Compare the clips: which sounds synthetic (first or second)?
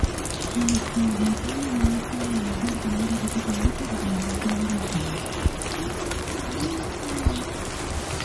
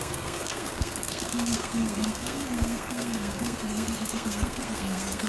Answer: second